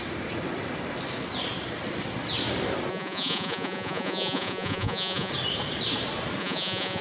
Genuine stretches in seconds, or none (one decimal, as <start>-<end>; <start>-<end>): 0.0-2.9; 5.3-6.4